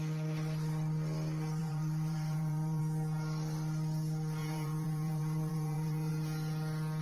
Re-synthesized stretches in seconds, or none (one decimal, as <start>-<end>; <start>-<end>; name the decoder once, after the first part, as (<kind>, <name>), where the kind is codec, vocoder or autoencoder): 1.6-2.8 (vocoder, BigVGAN v2); 4.4-6.1